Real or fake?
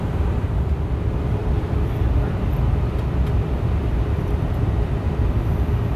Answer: fake